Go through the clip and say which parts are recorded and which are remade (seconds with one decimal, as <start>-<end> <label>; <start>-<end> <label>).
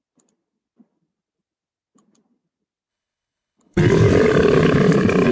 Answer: 0.0-2.9 recorded; 2.9-3.8 remade; 3.8-5.3 recorded